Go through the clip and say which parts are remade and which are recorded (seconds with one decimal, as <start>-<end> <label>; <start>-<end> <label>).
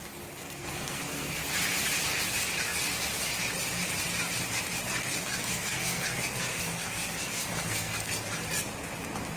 0.0-0.4 recorded; 0.4-1.4 remade; 1.4-5.0 recorded; 5.0-8.1 remade; 8.1-9.4 recorded